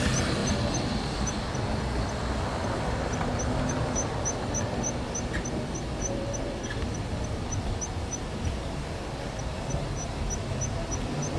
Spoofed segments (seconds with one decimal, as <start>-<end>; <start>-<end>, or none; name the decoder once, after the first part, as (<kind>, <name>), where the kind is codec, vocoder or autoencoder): none